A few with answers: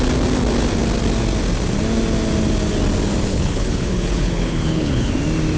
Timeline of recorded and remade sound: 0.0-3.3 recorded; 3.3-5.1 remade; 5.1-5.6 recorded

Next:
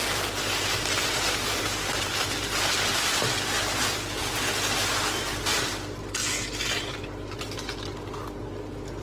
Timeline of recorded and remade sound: 0.0-2.1 remade; 2.1-2.7 recorded; 2.7-4.2 remade; 4.2-5.4 recorded; 5.4-6.2 remade; 6.2-9.0 recorded

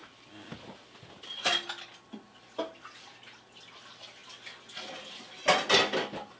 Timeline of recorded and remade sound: 0.0-6.4 recorded

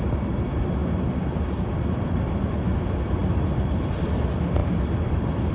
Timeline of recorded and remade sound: 0.0-0.8 recorded; 0.8-2.5 remade; 2.5-3.2 recorded; 3.2-3.9 remade; 3.9-4.6 recorded; 4.6-5.5 remade

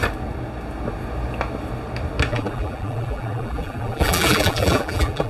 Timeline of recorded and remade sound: 0.0-2.3 recorded; 2.3-5.3 remade

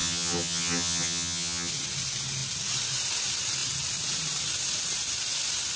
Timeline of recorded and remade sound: 0.0-1.7 remade; 1.7-5.8 recorded